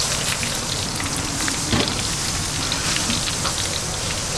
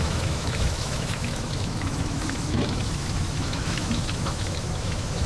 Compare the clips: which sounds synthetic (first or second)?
second